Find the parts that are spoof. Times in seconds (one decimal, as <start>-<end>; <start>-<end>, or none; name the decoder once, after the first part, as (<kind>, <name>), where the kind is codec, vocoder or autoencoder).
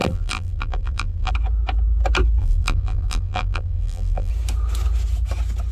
0.0-1.3 (vocoder, BigVGAN v2); 2.4-4.3